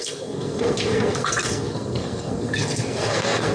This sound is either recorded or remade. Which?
remade